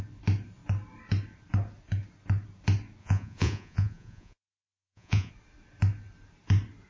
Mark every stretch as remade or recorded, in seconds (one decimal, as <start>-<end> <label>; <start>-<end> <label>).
0.0-3.0 recorded; 3.0-5.3 remade; 5.3-6.9 recorded